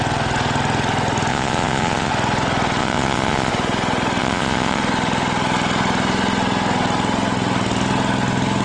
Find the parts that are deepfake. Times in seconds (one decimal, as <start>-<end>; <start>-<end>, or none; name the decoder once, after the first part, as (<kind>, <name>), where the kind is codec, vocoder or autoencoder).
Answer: 1.3-2.1 (vocoder, Vocos); 2.8-3.5; 4.2-4.8